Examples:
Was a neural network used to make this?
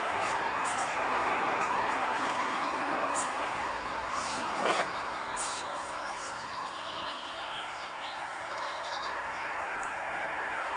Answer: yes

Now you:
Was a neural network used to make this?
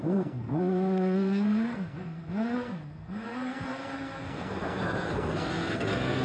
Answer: yes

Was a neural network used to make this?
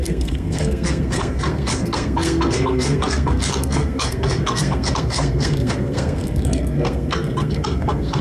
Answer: yes